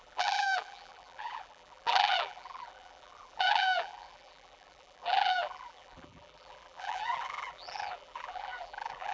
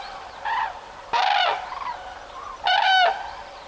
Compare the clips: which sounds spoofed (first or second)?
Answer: first